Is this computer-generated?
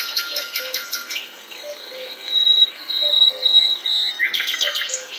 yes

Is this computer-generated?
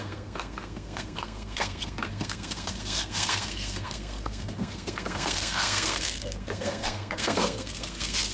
yes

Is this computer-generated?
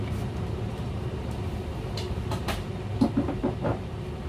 no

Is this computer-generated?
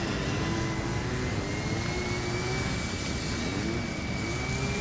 no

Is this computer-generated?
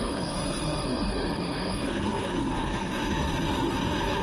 yes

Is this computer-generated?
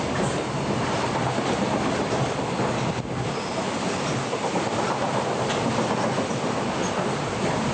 no